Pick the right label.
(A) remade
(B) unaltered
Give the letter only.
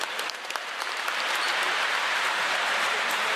A